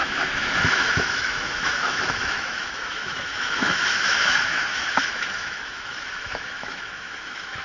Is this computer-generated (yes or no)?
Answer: yes